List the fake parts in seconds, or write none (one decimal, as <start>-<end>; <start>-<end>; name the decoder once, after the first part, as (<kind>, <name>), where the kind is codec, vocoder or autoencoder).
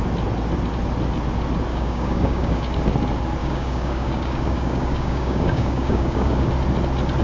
1.7-2.8 (codec, DAC); 3.4-6.5